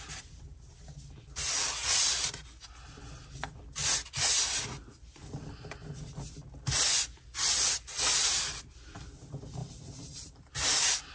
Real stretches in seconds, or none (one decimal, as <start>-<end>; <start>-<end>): 0.0-9.6